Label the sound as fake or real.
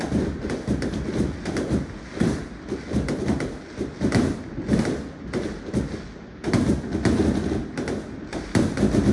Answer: real